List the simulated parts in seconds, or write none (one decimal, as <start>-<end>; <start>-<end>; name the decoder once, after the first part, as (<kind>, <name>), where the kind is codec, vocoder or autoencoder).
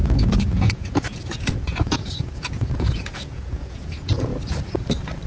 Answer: 0.0-4.3 (vocoder, Vocos)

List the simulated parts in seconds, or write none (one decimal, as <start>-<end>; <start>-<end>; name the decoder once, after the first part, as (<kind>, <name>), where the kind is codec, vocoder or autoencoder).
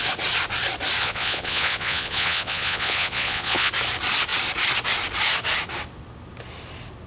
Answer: 1.0-3.7 (vocoder, Vocos)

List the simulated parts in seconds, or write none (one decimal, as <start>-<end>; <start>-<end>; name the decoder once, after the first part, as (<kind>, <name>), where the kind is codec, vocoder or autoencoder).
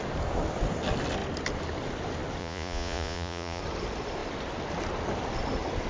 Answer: 2.4-3.6 (vocoder, Vocos)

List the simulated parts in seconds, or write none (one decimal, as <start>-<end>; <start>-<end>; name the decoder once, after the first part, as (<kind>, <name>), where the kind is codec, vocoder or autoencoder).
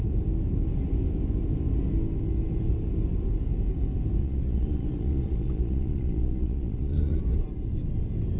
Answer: 4.2-7.2 (vocoder, Vocos)